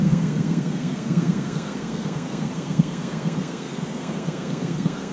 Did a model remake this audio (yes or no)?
yes